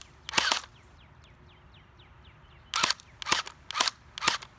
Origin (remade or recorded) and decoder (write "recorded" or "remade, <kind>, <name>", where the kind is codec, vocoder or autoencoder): recorded